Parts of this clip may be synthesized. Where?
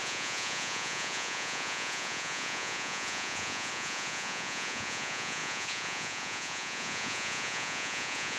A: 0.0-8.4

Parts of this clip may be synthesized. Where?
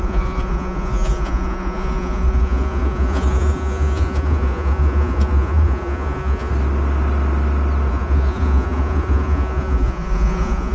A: 0.0-6.5; 7.9-10.7